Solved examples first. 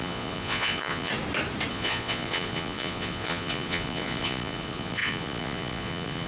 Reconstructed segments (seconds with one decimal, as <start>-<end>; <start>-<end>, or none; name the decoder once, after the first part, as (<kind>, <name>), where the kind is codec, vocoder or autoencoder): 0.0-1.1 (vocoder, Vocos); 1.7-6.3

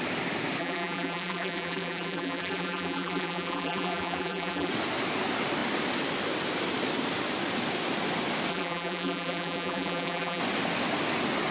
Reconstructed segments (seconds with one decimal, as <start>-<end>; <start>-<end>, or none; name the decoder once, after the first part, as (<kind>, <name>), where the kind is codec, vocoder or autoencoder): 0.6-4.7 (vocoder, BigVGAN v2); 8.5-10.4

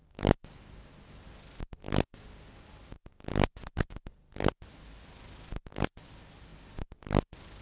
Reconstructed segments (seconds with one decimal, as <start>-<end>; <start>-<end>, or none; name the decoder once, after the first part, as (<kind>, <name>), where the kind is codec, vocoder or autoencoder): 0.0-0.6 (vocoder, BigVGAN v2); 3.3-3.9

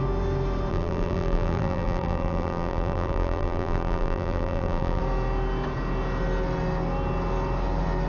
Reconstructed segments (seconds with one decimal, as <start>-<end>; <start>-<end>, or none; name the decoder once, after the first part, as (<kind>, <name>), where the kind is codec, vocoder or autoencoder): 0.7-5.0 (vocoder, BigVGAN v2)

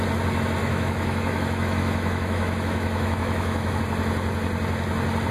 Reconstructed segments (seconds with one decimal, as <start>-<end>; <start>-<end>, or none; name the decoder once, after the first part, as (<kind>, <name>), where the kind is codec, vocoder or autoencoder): 0.6-3.8 (autoencoder, DAC-VAE)